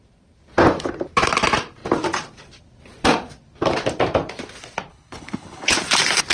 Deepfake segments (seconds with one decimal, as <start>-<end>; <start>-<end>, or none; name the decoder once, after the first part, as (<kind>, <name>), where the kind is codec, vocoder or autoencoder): 4.9-5.7 (codec, HILCodec)